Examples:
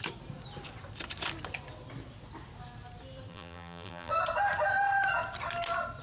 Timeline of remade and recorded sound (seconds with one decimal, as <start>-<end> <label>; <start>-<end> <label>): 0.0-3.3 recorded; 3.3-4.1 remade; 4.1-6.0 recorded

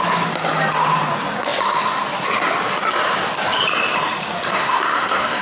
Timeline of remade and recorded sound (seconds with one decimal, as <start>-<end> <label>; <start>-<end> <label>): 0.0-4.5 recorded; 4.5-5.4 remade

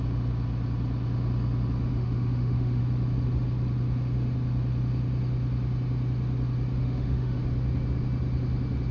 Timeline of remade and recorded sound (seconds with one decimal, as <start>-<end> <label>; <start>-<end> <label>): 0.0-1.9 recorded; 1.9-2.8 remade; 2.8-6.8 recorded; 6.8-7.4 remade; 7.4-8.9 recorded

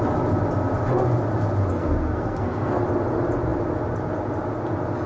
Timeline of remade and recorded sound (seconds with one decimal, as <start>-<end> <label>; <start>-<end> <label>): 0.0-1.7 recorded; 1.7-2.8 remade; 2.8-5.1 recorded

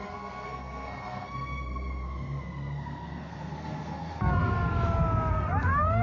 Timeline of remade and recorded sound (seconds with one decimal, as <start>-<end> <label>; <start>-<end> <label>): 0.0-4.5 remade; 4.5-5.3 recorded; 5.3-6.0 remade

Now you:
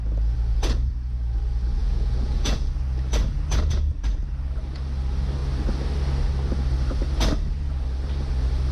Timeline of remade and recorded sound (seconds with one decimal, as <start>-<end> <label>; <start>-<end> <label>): 0.0-1.8 recorded; 1.8-2.7 remade; 2.7-8.7 recorded